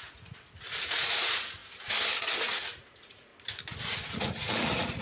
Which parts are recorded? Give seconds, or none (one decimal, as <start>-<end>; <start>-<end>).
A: 1.6-2.2; 3.3-4.1

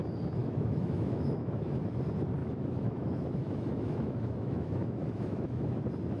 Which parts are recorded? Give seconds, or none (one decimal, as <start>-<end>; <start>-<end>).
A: 0.0-0.4; 2.0-2.4; 5.8-6.2

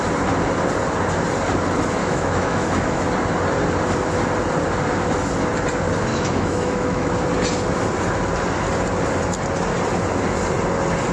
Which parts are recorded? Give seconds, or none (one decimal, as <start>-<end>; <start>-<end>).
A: 0.0-2.0; 3.0-6.1; 7.1-11.1

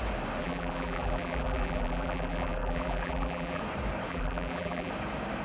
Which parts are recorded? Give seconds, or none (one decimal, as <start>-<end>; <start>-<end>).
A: 0.0-0.4; 3.6-4.1; 4.9-5.4

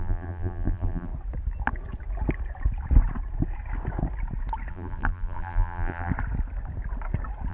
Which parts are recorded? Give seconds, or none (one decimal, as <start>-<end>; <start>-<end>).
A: 1.1-4.7; 6.1-7.5

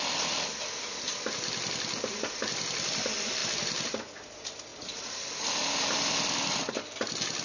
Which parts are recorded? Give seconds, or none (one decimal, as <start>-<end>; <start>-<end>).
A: 0.0-7.4

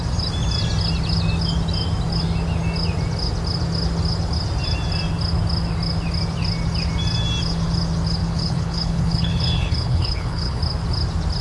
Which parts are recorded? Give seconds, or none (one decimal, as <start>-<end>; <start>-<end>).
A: 0.0-8.2; 10.6-11.4

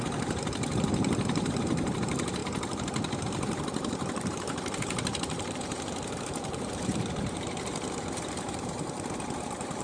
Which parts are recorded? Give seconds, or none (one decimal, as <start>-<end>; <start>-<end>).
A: 2.4-3.2